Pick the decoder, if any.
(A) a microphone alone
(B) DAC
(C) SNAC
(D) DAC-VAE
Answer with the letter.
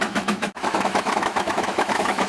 D